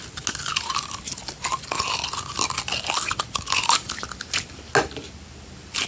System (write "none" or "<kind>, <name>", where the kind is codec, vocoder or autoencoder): none